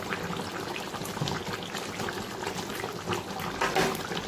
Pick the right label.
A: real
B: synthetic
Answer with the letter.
A